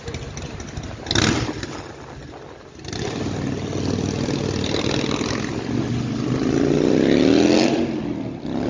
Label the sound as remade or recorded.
recorded